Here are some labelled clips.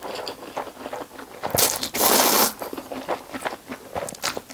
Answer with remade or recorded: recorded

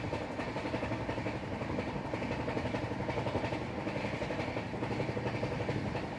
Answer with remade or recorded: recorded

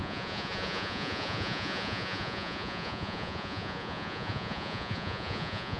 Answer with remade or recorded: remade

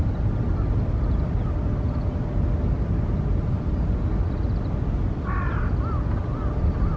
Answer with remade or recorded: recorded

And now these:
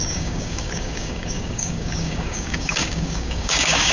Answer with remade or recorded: remade